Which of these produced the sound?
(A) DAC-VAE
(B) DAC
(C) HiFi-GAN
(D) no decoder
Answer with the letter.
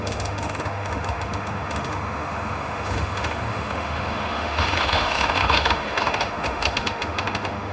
A